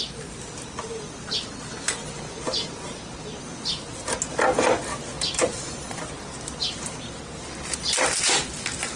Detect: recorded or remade recorded